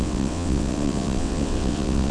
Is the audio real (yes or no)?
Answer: no